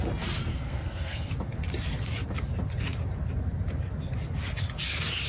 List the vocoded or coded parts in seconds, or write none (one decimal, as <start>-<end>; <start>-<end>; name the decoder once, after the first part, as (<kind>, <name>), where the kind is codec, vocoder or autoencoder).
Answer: 0.5-1.3 (codec, SNAC)